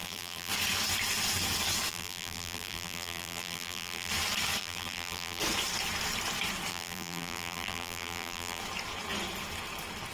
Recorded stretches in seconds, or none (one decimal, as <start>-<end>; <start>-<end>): 0.5-1.9; 4.1-4.6; 5.4-6.7; 8.6-10.1